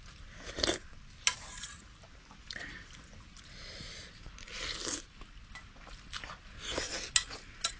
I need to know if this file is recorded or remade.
recorded